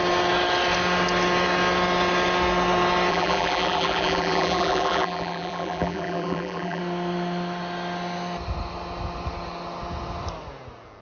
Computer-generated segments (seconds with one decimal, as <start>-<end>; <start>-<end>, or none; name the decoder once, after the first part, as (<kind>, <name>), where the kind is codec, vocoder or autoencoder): 3.1-6.8 (vocoder, BigVGAN v2)